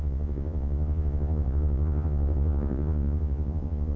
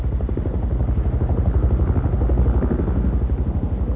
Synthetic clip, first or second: first